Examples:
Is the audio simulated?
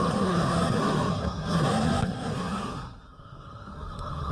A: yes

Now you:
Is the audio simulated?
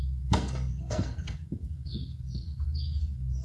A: yes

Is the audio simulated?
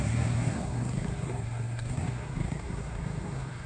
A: yes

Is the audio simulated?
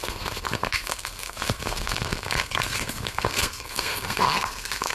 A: yes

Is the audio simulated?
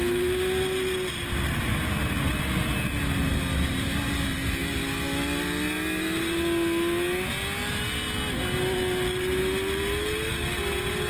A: no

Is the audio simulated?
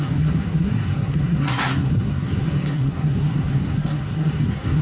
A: yes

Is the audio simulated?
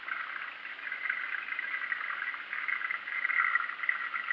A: no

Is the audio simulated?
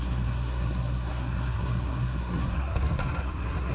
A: yes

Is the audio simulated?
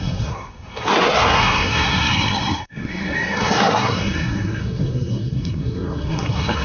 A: yes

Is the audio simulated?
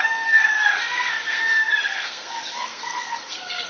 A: yes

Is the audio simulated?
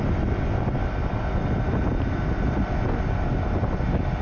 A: no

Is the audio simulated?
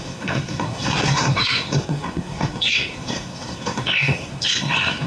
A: yes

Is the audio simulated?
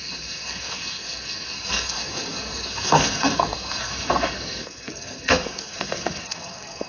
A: yes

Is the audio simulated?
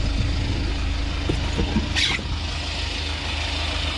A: no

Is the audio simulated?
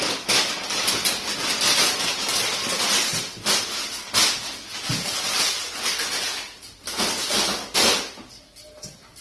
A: no